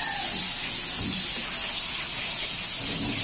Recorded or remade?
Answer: recorded